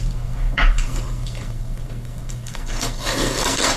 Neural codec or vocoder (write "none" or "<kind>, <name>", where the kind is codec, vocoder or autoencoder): codec, SNAC